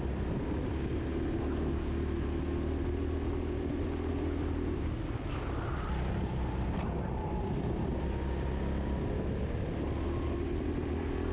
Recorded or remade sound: recorded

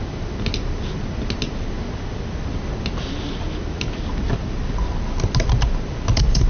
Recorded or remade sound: recorded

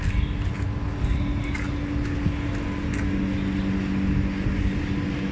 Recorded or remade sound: recorded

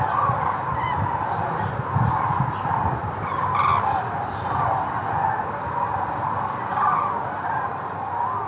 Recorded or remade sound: recorded